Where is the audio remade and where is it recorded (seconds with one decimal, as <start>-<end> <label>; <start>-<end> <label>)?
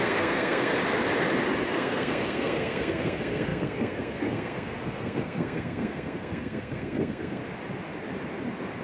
0.0-0.7 remade; 0.7-1.7 recorded; 1.7-7.4 remade; 7.4-8.8 recorded